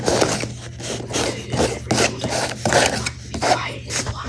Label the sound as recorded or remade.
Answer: recorded